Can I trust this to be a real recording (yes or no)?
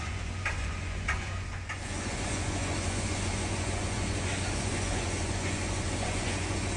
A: no